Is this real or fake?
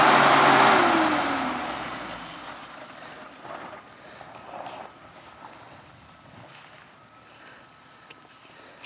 real